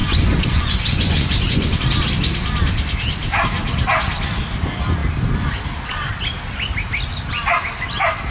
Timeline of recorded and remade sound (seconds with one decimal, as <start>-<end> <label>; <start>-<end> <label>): 0.0-1.8 remade; 1.8-8.3 recorded